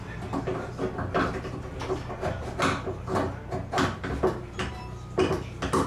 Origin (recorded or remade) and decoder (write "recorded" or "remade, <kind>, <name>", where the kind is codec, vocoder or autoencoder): recorded